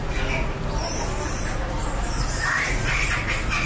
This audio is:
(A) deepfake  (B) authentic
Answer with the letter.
B